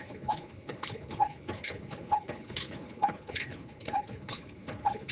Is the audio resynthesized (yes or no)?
yes